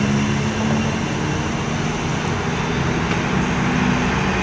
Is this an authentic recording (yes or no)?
yes